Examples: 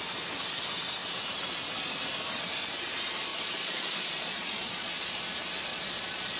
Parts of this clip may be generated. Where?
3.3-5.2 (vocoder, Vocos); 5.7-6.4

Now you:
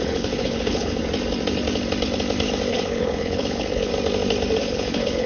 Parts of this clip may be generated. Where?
0.0-1.0 (codec, HILCodec); 2.7-3.9; 4.6-5.3